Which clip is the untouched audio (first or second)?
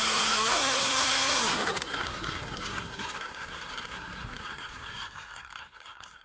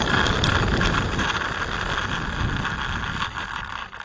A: second